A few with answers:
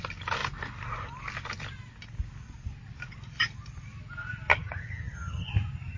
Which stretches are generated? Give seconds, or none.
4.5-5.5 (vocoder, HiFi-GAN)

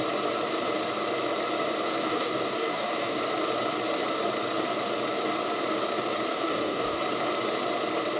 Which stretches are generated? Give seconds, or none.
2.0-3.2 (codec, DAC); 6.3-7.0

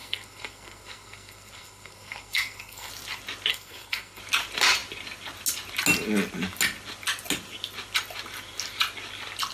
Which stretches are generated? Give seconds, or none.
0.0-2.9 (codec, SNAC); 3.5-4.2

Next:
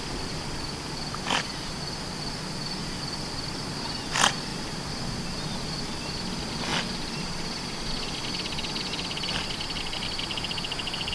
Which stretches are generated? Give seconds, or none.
2.8-3.3 (vocoder, BigVGAN v2)

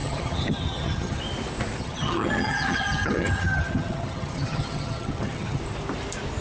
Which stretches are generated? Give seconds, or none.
0.0-1.2 (vocoder, HiFi-GAN); 1.8-5.6

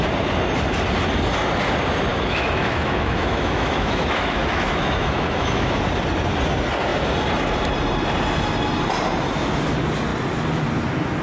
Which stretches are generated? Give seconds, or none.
2.1-5.8 (autoencoder, DAC-VAE)